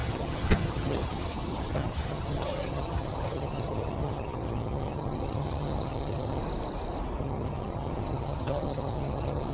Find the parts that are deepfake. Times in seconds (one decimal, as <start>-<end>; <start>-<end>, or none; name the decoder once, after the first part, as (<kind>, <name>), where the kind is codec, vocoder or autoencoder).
0.0-6.4 (vocoder, HiFi-GAN); 7.2-9.5